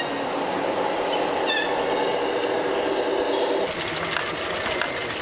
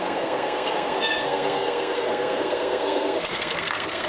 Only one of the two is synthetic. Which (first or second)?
second